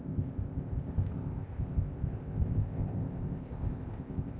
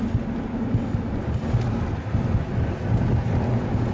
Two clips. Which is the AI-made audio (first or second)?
first